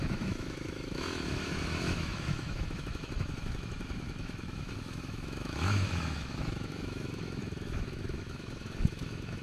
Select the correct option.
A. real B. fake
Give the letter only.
B